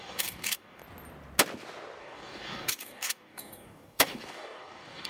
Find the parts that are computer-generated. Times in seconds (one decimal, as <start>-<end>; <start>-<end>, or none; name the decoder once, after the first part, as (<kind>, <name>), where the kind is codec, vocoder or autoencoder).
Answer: 0.0-0.8 (codec, DAC); 2.0-5.1